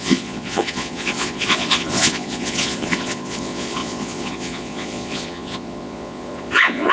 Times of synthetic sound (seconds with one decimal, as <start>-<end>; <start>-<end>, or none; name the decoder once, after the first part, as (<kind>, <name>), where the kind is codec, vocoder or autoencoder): 0.0-6.9 (vocoder, Vocos)